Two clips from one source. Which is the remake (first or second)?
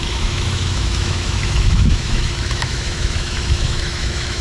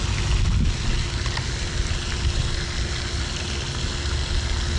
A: first